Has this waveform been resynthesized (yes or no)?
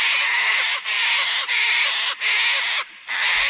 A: no